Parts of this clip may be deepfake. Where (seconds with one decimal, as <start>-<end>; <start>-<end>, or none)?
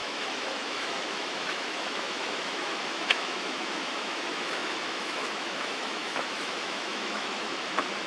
0.0-8.1